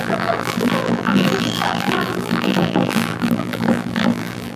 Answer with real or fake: fake